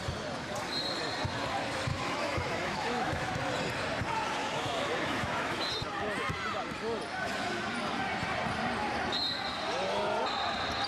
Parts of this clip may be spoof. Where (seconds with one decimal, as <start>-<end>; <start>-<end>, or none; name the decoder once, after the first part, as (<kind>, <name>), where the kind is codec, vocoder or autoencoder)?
1.9-3.3 (autoencoder, DAC-VAE); 4.4-5.7